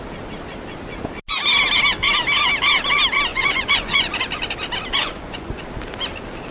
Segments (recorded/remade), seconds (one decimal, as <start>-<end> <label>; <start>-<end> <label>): 0.0-3.3 recorded; 3.3-4.1 remade; 4.1-5.0 recorded; 5.0-5.6 remade; 5.6-6.5 recorded